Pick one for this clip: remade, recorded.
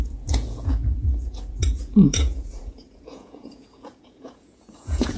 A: remade